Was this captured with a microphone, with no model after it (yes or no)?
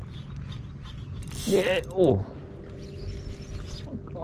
yes